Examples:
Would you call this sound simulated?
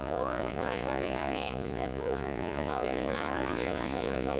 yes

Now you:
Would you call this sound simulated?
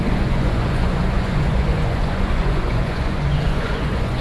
yes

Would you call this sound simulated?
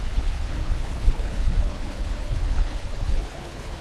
yes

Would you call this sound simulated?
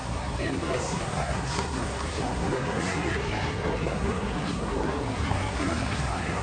yes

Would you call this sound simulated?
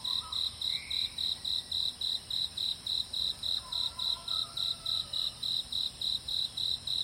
yes